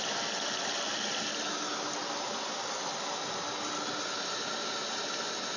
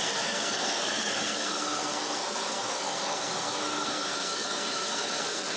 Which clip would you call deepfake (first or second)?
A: second